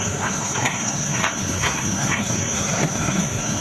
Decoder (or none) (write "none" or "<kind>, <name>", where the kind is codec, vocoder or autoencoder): codec, SNAC